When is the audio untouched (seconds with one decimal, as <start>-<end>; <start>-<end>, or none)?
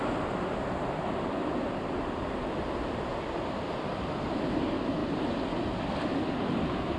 0.0-0.6; 1.3-5.0; 5.6-7.0